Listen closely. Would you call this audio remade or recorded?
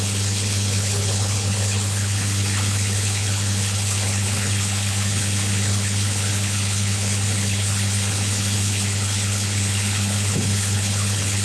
remade